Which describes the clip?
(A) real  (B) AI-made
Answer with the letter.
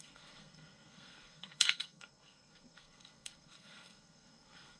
B